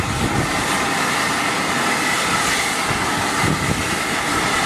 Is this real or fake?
real